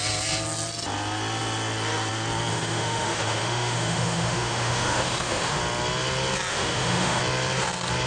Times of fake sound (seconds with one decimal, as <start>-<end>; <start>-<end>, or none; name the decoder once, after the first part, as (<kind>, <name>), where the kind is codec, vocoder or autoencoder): 2.5-5.6 (autoencoder, DAC-VAE); 6.5-7.2